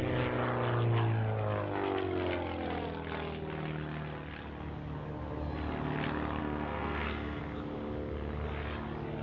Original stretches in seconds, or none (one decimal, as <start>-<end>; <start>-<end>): 0.0-6.4; 7.4-9.2